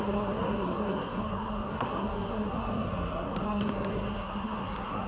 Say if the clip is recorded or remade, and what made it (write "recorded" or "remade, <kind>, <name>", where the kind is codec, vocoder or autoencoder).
remade, codec, SNAC